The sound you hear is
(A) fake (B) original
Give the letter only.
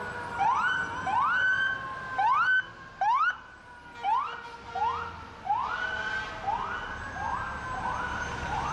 B